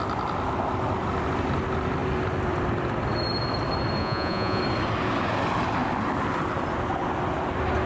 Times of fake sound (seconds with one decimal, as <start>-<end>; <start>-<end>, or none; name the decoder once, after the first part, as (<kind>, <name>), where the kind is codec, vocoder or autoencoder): 4.0-4.6 (vocoder, Vocos)